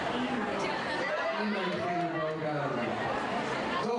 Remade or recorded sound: remade